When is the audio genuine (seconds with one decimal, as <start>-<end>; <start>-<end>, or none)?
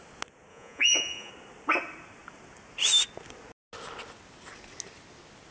0.0-0.5; 1.3-5.5